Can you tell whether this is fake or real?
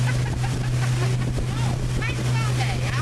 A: real